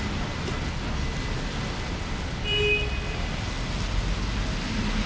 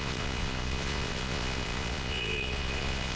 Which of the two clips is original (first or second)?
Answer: first